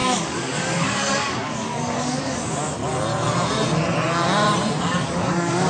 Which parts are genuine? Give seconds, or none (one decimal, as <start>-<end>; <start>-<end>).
2.8-4.8